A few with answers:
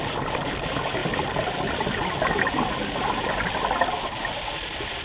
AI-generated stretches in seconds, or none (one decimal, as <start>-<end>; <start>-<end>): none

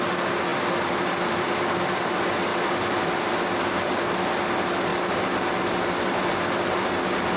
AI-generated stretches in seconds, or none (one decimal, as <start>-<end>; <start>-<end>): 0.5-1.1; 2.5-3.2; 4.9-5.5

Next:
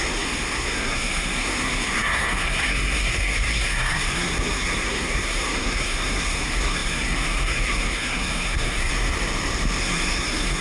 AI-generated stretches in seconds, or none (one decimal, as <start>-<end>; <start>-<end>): 0.0-8.9; 9.8-10.6

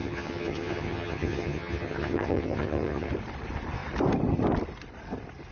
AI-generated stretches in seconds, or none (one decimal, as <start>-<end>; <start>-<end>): 0.0-3.1